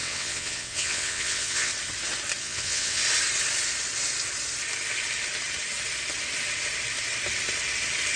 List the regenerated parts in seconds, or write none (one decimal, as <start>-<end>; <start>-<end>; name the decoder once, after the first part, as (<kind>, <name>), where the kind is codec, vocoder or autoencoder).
0.0-1.7 (vocoder, WaveNeXt); 2.4-3.0